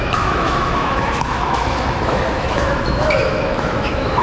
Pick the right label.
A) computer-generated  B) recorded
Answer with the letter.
A